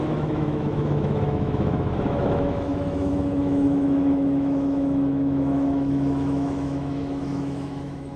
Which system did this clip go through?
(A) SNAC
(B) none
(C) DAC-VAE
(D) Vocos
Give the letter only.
C